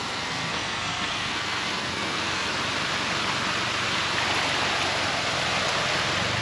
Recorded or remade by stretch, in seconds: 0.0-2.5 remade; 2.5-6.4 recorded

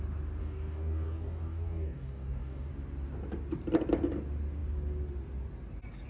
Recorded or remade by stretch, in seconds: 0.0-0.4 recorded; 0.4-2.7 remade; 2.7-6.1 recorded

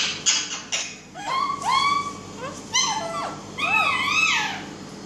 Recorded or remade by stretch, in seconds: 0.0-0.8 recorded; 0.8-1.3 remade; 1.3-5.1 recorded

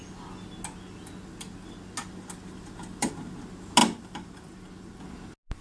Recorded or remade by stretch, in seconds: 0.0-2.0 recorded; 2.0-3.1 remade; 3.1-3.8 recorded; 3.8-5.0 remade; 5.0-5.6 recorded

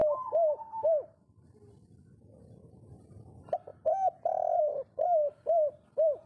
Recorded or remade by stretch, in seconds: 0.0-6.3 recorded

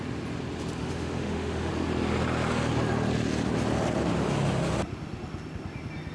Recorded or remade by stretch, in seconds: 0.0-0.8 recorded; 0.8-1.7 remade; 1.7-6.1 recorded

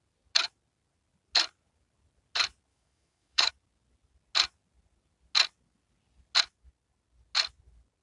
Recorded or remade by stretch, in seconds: 0.0-2.7 recorded; 2.7-3.5 remade; 3.5-8.0 recorded

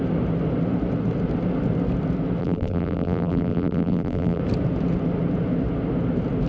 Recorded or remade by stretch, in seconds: 0.0-2.4 recorded; 2.4-4.4 remade; 4.4-6.5 recorded